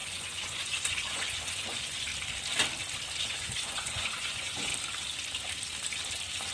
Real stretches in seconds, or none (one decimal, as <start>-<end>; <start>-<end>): 2.1-3.2; 4.7-6.5